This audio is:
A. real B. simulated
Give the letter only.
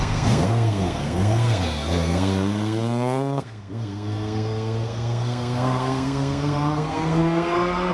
B